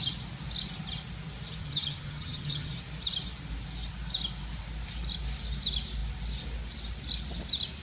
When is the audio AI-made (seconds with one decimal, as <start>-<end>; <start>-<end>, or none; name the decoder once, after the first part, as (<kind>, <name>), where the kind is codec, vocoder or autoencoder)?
1.6-2.7 (vocoder, HiFi-GAN)